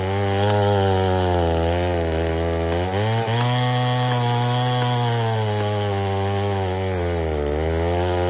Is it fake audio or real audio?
real